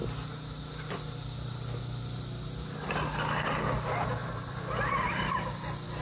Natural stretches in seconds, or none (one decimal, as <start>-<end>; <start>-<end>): 0.0-3.6